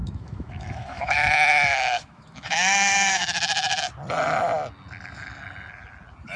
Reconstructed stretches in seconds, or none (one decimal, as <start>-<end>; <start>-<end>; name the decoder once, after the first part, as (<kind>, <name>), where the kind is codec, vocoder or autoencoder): 0.0-3.8 (autoencoder, DAC-VAE)